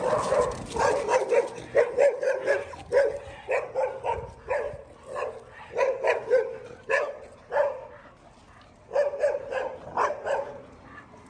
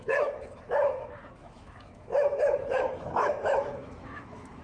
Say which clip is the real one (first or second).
first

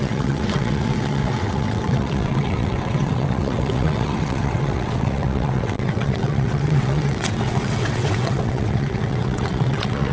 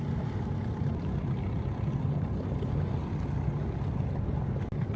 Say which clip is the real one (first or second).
second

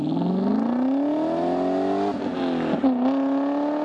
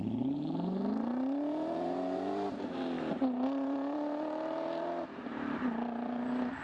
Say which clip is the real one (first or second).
first